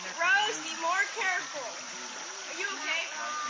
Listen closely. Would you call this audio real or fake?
real